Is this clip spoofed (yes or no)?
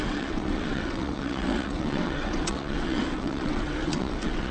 yes